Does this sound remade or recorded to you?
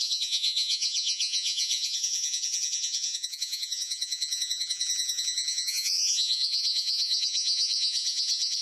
remade